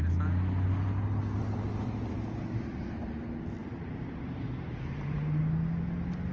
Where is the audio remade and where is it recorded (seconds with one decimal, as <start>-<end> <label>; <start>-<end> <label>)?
0.0-3.6 recorded; 3.6-5.4 remade; 5.4-6.3 recorded